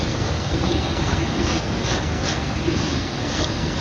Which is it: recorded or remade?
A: remade